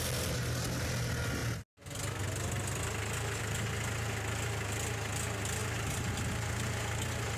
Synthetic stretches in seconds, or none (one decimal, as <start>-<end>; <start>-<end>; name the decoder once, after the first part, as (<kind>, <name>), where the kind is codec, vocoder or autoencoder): 5.6-6.1 (vocoder, BigVGAN v2)